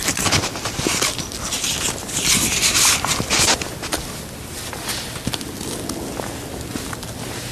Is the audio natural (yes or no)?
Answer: yes